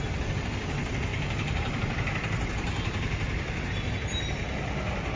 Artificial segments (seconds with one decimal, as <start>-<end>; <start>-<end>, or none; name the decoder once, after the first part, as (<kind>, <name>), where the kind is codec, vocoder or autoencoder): 1.1-3.9 (vocoder, BigVGAN v2)